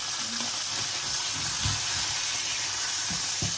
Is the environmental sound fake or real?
real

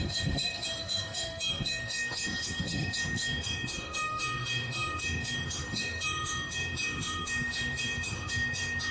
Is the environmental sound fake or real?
fake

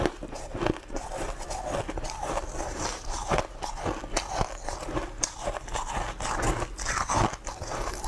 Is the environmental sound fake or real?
real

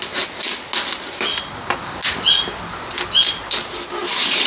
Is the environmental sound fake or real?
real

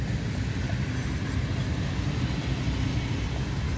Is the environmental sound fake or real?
real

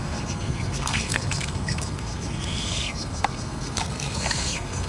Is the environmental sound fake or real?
fake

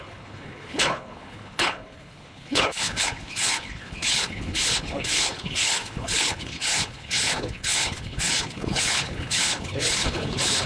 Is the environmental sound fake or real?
fake